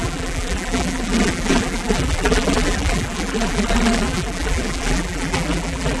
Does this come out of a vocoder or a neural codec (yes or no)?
yes